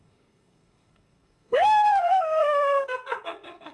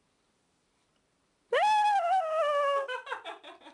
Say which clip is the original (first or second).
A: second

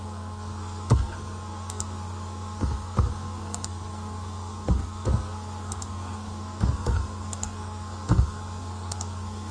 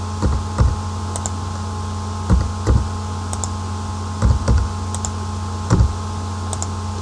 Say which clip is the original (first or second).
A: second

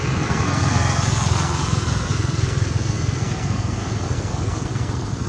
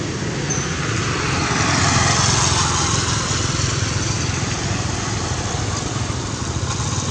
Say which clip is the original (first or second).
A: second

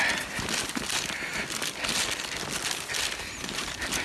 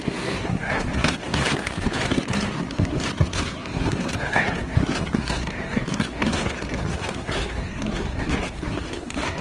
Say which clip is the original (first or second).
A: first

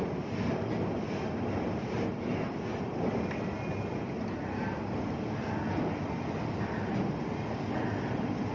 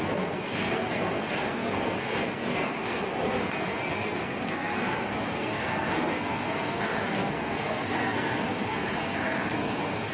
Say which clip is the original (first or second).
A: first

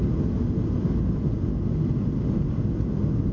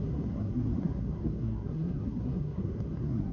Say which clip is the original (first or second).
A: first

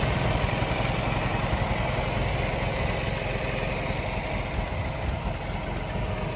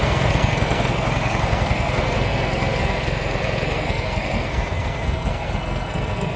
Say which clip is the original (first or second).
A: first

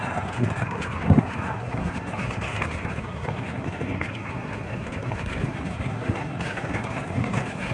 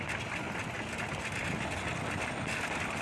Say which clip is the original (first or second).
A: second